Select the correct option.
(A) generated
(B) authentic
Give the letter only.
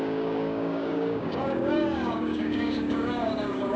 A